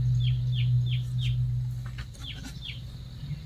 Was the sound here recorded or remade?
recorded